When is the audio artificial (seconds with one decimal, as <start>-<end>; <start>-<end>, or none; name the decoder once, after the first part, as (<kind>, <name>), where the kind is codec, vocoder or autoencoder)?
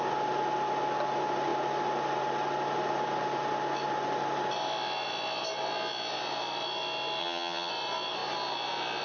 7.2-7.7 (vocoder, HiFi-GAN)